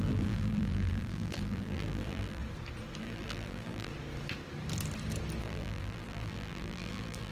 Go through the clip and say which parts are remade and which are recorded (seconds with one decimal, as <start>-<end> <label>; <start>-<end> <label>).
0.0-2.4 remade; 2.4-3.0 recorded; 3.0-3.9 remade; 3.9-5.4 recorded; 5.4-7.3 remade